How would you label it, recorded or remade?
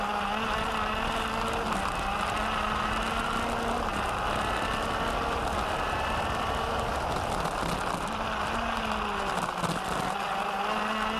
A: recorded